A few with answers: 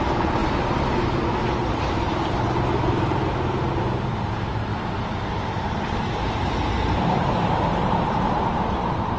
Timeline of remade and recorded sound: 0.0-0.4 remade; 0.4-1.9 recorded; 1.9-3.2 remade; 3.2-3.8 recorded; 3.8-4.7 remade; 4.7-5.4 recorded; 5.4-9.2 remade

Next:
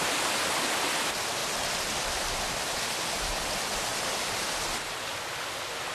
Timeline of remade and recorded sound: 0.0-1.4 recorded; 1.4-2.8 remade; 2.8-3.9 recorded; 3.9-4.5 remade; 4.5-5.9 recorded

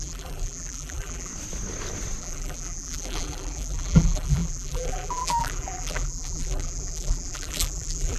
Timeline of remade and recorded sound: 0.0-1.3 remade; 1.3-2.2 recorded; 2.2-8.2 remade

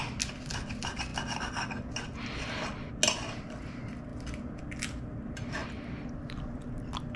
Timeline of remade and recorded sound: 0.0-7.2 recorded

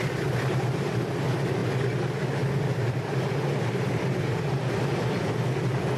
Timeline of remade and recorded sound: 0.0-6.0 recorded

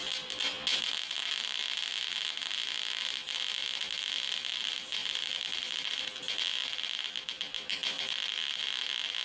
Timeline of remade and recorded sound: 0.0-4.5 recorded; 4.5-6.0 remade; 6.0-6.6 recorded; 6.6-8.6 remade; 8.6-9.2 recorded

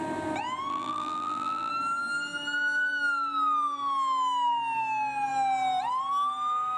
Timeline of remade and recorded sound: 0.0-0.7 recorded; 0.7-1.7 remade; 1.7-6.8 recorded

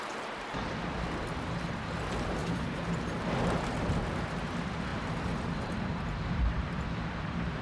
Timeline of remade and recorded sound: 0.0-2.4 recorded; 2.4-3.3 remade; 3.3-4.9 recorded; 4.9-7.6 remade